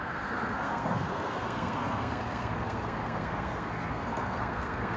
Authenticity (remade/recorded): remade